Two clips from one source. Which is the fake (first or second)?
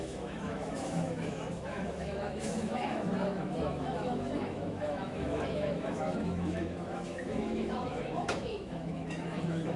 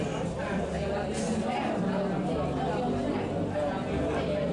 first